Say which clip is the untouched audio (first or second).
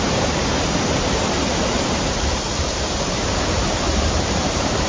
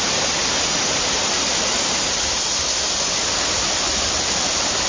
second